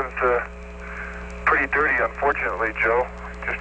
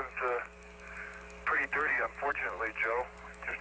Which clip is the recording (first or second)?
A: first